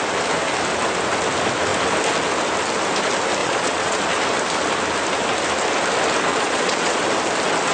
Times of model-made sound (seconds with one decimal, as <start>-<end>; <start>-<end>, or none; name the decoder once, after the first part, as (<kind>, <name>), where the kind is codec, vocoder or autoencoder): 3.4-4.0 (vocoder, Vocos); 6.3-7.0